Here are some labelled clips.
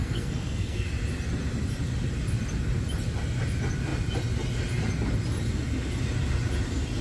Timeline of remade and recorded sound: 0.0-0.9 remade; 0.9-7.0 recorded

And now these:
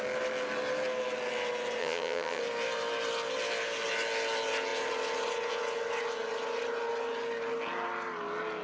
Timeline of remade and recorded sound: 0.0-1.8 recorded; 1.8-2.4 remade; 2.4-8.6 recorded

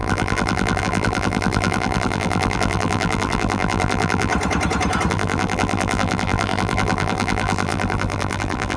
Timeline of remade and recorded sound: 0.0-4.3 remade; 4.3-5.1 recorded; 5.1-8.8 remade

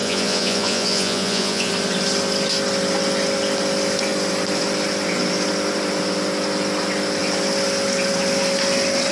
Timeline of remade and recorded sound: 0.0-1.7 remade; 1.7-9.1 recorded

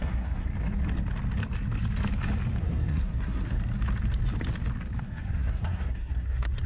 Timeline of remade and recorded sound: 0.0-0.5 remade; 0.5-2.6 recorded; 2.6-3.6 remade; 3.6-5.0 recorded; 5.0-6.7 remade

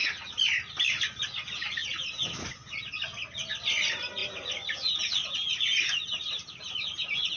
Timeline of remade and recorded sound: 0.0-7.4 recorded

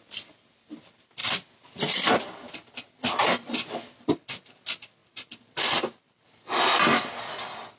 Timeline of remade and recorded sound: 0.0-7.8 recorded

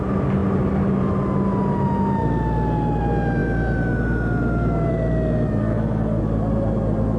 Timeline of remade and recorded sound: 0.0-5.6 recorded; 5.6-6.2 remade; 6.2-7.2 recorded